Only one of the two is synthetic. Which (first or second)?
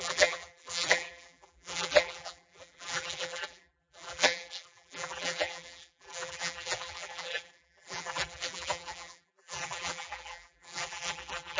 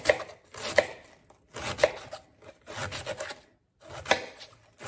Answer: first